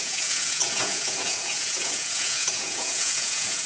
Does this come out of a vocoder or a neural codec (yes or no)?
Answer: yes